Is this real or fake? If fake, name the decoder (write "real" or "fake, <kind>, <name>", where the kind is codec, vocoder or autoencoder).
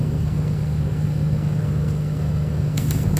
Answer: fake, codec, SNAC